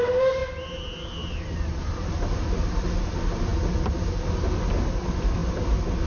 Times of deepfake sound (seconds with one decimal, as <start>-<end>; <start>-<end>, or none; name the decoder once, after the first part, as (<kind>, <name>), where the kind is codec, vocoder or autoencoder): none